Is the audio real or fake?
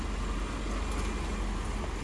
real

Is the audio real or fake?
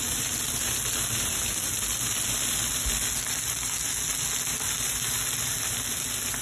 real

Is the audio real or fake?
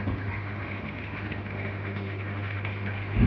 fake